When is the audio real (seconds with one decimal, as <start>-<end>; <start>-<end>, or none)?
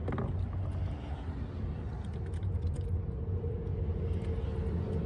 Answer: 0.0-2.4; 3.6-5.1